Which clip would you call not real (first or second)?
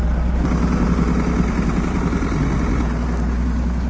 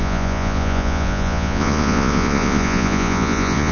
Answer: second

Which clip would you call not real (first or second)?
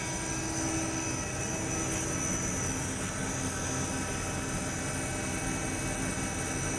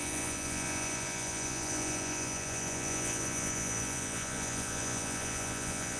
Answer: second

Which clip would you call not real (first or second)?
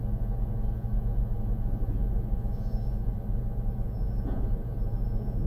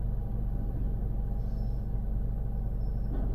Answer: first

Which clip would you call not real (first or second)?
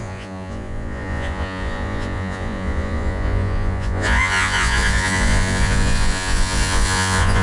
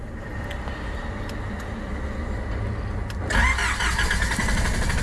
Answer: first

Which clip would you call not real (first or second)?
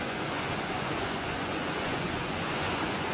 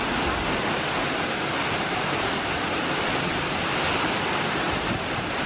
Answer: first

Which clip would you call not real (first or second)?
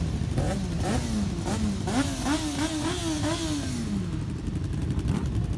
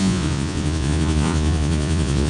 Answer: second